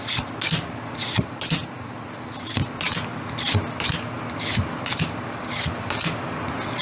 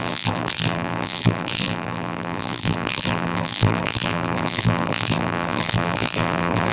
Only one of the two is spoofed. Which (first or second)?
second